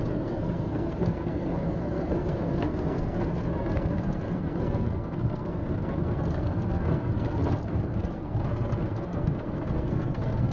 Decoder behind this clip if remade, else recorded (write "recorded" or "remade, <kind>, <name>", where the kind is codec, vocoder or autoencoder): remade, codec, SNAC